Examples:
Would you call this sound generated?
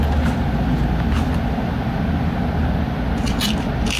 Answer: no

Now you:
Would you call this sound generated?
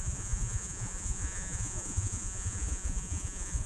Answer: yes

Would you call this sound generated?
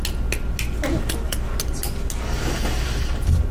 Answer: no